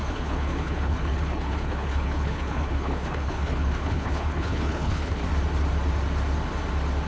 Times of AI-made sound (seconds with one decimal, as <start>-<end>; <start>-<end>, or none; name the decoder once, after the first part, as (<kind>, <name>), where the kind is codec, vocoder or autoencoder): 0.0-5.2 (codec, HILCodec)